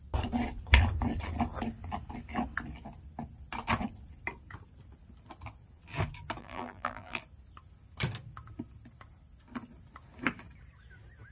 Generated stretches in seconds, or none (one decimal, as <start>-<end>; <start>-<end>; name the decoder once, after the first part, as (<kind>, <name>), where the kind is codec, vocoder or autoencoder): 6.4-7.2 (vocoder, BigVGAN v2)